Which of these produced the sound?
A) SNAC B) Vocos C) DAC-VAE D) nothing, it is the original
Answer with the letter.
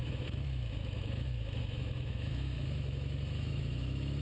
C